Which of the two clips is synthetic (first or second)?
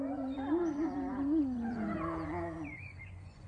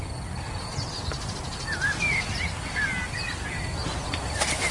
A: first